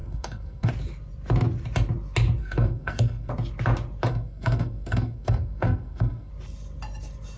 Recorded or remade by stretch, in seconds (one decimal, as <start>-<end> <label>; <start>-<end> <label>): 0.0-0.7 remade; 0.7-2.4 recorded; 2.4-3.3 remade; 3.3-4.1 recorded; 4.1-6.3 remade; 6.3-7.4 recorded